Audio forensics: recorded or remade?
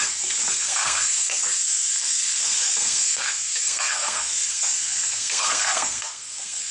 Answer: remade